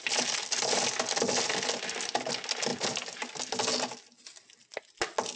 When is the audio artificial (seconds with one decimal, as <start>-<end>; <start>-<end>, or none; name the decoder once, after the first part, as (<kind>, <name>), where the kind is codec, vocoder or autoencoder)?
none